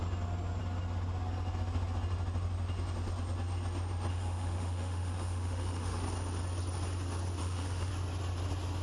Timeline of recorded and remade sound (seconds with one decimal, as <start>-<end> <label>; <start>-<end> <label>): 0.0-4.1 recorded; 4.1-6.0 remade; 6.0-7.4 recorded; 7.4-7.9 remade; 7.9-8.8 recorded